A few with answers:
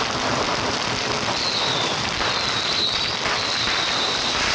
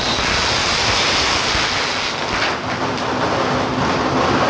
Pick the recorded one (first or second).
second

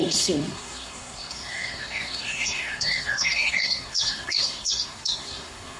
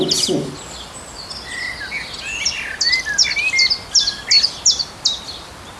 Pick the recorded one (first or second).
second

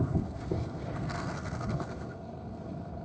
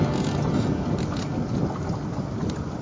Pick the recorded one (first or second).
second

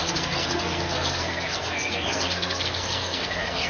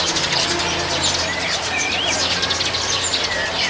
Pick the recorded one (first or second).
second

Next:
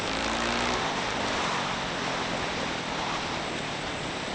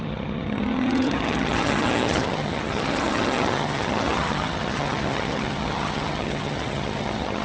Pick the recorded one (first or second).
first